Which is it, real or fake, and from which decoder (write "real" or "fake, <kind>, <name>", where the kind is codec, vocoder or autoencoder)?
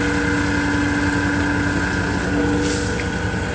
real